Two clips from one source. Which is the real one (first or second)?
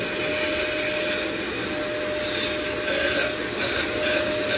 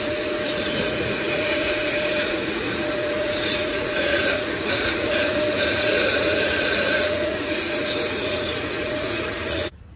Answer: first